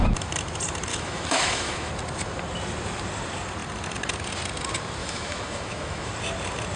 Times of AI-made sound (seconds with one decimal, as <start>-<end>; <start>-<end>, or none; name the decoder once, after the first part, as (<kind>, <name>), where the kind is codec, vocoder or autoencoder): 0.9-1.9 (autoencoder, DAC-VAE); 5.0-6.1